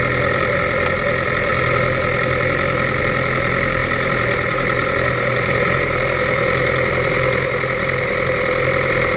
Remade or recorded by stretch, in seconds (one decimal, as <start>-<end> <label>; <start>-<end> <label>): 0.0-3.8 recorded; 3.8-6.0 remade; 6.0-9.2 recorded